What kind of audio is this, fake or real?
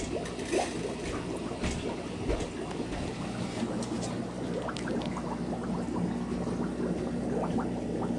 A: real